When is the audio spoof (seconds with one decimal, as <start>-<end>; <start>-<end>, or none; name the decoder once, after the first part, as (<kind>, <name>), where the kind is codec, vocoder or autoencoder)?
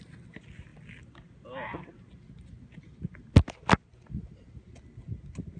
none